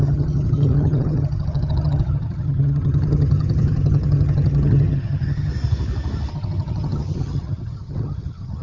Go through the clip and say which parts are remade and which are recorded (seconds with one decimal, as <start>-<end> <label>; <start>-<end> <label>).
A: 0.0-5.5 remade; 5.5-6.3 recorded; 6.3-8.6 remade